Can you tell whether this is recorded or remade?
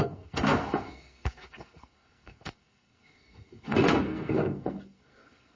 remade